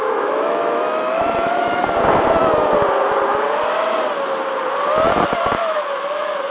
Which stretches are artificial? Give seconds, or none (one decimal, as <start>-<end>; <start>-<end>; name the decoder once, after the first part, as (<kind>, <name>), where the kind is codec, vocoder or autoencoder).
0.0-1.8 (autoencoder, DAC-VAE); 5.4-6.5